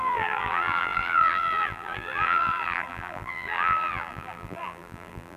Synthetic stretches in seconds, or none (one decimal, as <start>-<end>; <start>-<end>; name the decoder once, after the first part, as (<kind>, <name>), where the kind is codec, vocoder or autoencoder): 0.0-5.4 (vocoder, BigVGAN v2)

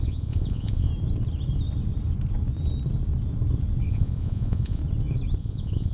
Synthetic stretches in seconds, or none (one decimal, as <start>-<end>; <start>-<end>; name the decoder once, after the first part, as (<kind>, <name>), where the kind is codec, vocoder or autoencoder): 0.0-0.9 (vocoder, Vocos); 3.9-4.8; 5.4-5.9

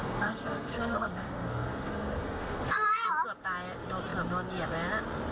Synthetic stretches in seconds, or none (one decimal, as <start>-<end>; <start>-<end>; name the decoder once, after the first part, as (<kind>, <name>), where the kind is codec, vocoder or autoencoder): 0.0-3.1 (codec, SNAC)

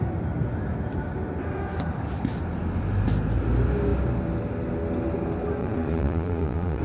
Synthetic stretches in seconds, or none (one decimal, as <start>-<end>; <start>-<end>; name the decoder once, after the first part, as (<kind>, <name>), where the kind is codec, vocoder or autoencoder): 5.6-6.8 (vocoder, Vocos)

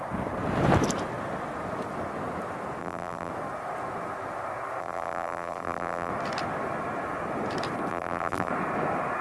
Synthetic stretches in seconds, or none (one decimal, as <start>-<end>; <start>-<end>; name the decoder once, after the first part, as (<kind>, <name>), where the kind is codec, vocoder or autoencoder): 2.8-3.3 (vocoder, BigVGAN v2); 4.8-6.1; 7.9-8.5

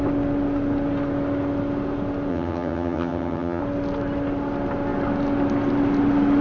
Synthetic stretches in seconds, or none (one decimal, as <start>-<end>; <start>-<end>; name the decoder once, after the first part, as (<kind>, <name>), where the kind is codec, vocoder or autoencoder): 2.3-3.6 (vocoder, HiFi-GAN)

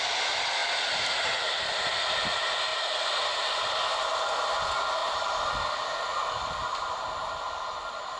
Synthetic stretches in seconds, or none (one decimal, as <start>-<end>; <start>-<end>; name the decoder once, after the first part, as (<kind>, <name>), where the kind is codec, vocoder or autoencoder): 0.6-1.4 (vocoder, BigVGAN v2); 5.0-5.7